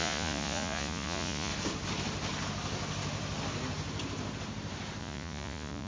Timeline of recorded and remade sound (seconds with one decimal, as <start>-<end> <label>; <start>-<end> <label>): 0.0-1.5 remade; 1.5-5.0 recorded; 5.0-5.9 remade